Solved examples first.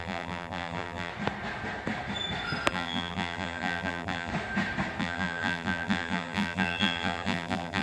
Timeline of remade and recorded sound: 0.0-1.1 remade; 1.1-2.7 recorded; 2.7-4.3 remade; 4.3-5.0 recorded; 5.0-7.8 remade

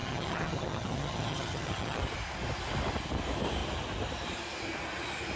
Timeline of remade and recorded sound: 0.0-2.0 remade; 2.0-5.4 recorded

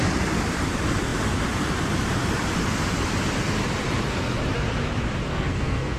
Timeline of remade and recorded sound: 0.0-5.3 recorded; 5.3-6.0 remade